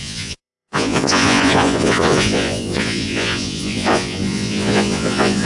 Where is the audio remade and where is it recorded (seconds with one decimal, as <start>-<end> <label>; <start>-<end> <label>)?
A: 0.0-5.5 remade